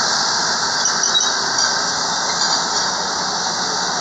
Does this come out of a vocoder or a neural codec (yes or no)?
no